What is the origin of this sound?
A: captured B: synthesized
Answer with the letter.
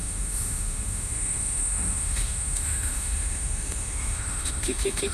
B